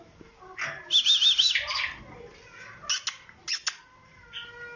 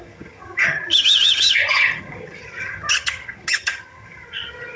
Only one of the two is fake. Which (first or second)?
second